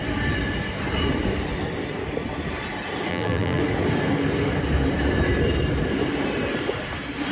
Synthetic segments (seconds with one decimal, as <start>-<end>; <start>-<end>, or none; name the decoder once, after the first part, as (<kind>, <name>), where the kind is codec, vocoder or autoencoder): 3.1-3.6 (vocoder, BigVGAN v2)